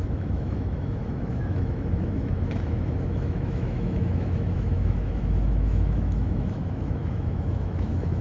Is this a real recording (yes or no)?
no